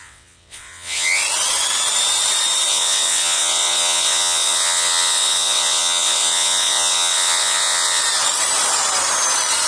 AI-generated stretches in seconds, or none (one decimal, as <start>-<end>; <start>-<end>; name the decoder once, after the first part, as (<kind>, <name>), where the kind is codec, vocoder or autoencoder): 0.0-1.2 (vocoder, WaveNeXt); 2.7-8.0